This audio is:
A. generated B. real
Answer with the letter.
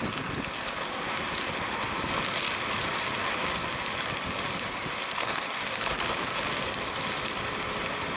B